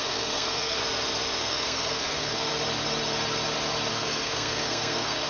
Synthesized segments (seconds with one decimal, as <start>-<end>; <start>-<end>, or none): 0.0-0.8; 1.4-2.5; 3.9-5.3